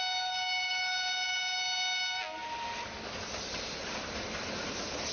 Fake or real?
real